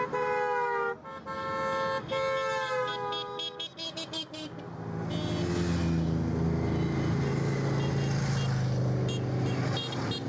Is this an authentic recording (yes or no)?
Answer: yes